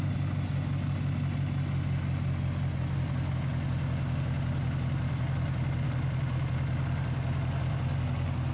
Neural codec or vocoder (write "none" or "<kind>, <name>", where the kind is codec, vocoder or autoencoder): none